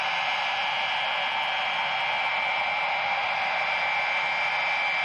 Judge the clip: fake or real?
real